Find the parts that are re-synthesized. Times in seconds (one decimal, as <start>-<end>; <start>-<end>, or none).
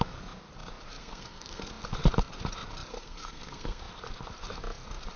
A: 1.0-1.7; 2.9-3.8